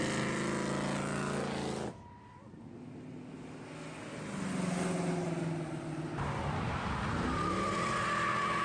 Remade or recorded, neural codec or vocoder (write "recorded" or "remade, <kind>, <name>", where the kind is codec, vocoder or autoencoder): recorded